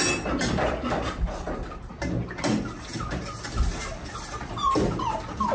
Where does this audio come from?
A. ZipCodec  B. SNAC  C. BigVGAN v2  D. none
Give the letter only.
D